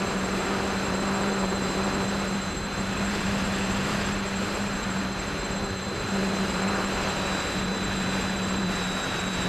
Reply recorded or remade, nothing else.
remade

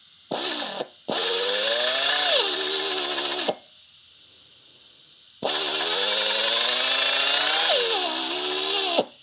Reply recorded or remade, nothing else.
recorded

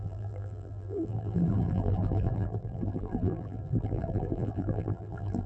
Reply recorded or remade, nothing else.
remade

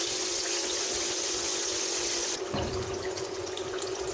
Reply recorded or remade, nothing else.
remade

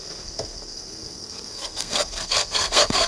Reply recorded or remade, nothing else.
remade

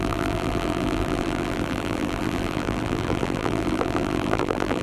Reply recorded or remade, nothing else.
remade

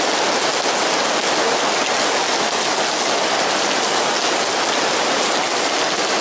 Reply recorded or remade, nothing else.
recorded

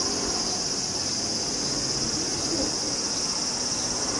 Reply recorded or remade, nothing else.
remade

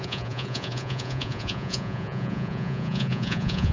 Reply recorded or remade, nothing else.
remade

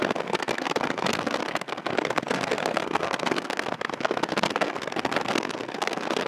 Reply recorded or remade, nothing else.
remade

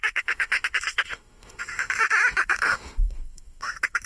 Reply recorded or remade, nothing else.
remade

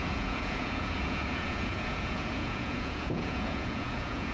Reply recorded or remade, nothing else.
remade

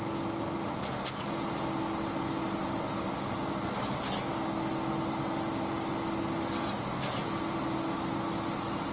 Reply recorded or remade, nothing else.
recorded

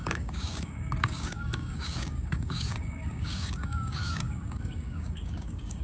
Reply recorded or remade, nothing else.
remade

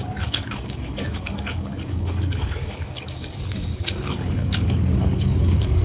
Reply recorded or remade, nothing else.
remade